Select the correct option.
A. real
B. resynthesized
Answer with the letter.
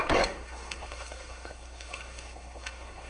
B